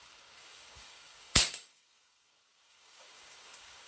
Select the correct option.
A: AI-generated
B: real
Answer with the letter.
A